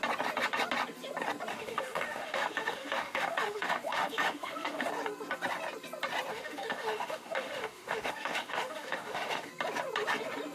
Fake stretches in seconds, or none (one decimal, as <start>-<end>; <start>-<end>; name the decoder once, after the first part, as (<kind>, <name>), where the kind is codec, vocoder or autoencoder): 1.5-4.9 (autoencoder, DAC-VAE); 6.3-9.5